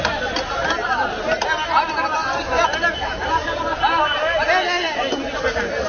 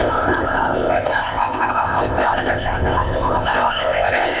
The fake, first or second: second